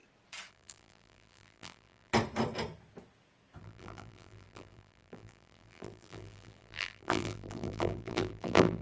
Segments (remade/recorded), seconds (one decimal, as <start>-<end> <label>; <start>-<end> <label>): 0.0-0.5 recorded; 0.5-2.1 remade; 2.1-3.6 recorded; 3.6-8.8 remade

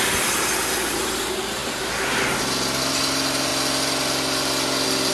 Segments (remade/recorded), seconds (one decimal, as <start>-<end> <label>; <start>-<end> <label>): 0.0-5.1 recorded

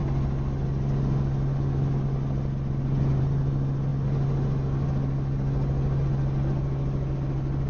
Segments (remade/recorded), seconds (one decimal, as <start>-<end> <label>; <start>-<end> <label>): 0.0-7.7 recorded

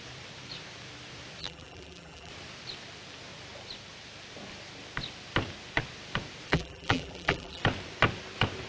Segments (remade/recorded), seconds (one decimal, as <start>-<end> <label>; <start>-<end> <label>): 0.0-1.4 recorded; 1.4-2.3 remade; 2.3-6.5 recorded; 6.5-7.6 remade; 7.6-8.7 recorded

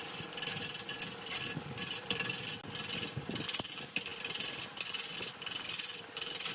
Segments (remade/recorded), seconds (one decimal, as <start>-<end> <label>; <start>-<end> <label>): 0.0-2.6 remade; 2.6-3.2 recorded; 3.2-6.5 remade

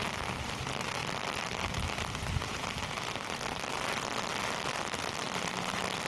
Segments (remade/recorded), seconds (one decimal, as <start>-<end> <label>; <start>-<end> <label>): 0.0-6.1 recorded

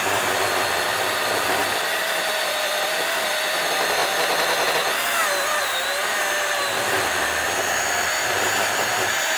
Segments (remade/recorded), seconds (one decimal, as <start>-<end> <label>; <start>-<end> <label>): 0.0-1.6 recorded; 1.6-2.3 remade; 2.3-8.2 recorded; 8.2-9.0 remade; 9.0-9.4 recorded

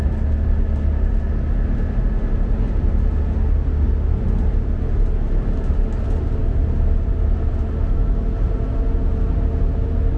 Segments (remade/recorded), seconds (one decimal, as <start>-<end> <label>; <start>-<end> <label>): 0.0-10.2 recorded